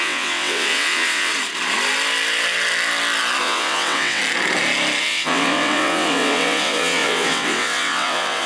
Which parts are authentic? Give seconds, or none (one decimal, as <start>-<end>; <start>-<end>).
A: 1.3-3.4; 4.2-5.0